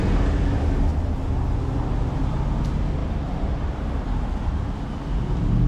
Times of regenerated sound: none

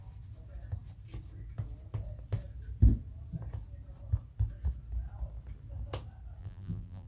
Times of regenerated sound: 6.4-7.1 (vocoder, BigVGAN v2)

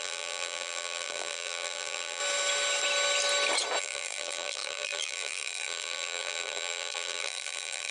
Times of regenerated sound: 0.0-2.2 (vocoder, BigVGAN v2); 3.8-7.9

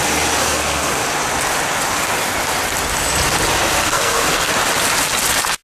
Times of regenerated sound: 0.4-1.0 (codec, SNAC); 3.8-4.5

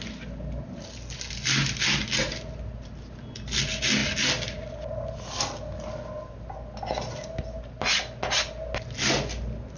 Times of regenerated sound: none